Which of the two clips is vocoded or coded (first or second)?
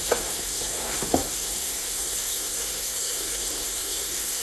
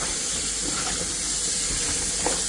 first